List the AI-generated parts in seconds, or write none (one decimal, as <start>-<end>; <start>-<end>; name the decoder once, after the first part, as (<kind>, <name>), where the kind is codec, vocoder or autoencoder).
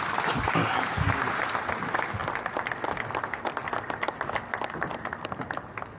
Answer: none